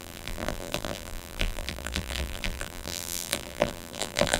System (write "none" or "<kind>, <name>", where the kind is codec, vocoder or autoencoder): vocoder, BigVGAN v2